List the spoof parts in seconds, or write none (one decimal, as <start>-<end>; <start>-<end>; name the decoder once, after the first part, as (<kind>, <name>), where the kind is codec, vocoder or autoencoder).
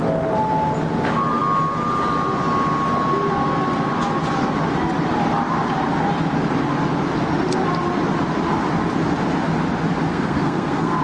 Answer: 10.1-11.0 (codec, SNAC)